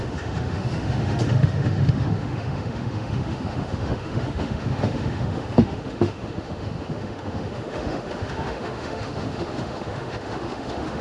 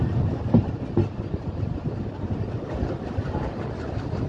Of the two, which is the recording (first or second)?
second